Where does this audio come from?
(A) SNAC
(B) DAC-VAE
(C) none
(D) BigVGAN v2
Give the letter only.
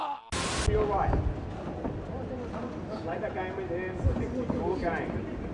C